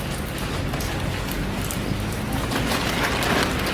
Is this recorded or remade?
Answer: recorded